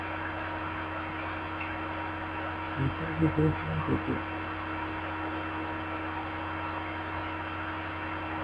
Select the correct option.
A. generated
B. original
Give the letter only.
B